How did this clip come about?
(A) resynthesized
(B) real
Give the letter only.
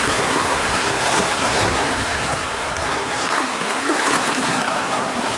A